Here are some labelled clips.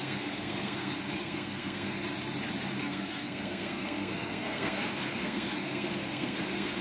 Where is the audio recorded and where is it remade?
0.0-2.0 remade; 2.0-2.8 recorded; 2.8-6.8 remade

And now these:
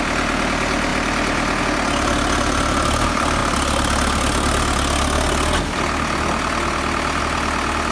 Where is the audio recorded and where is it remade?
0.0-7.9 recorded

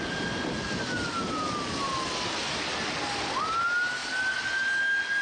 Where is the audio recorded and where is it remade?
0.0-5.2 recorded

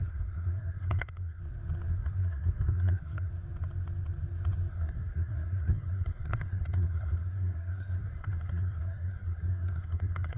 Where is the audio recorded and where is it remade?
0.0-1.4 remade; 1.4-1.9 recorded; 1.9-3.3 remade; 3.3-4.7 recorded; 4.7-10.4 remade

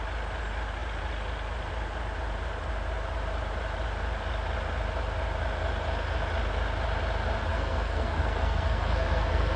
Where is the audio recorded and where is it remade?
0.0-7.5 recorded; 7.5-9.6 remade

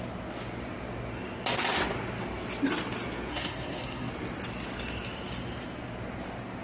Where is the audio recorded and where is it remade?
0.0-3.3 recorded; 3.3-4.1 remade; 4.1-6.6 recorded